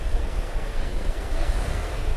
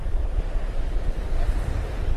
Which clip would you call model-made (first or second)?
first